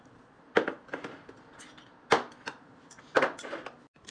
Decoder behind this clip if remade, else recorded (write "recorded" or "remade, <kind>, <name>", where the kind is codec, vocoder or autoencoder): recorded